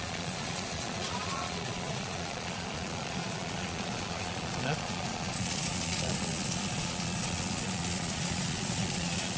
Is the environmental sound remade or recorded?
remade